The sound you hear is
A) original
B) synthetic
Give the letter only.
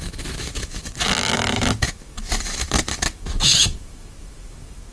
B